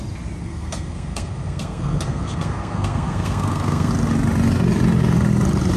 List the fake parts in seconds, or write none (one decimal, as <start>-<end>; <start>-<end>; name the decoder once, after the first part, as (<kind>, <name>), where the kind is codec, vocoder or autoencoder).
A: 0.4-3.9 (codec, SNAC)